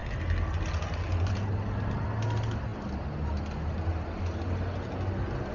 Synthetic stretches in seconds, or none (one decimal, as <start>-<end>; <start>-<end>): none